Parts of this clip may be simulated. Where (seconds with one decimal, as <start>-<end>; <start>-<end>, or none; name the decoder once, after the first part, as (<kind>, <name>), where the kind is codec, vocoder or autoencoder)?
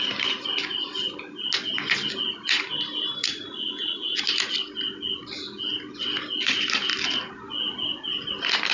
3.2-4.2 (vocoder, Vocos)